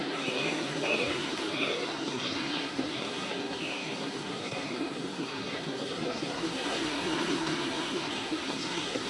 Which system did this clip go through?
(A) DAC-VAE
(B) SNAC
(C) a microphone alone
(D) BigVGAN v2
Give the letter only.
B